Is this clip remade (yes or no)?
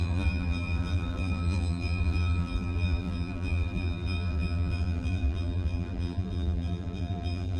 yes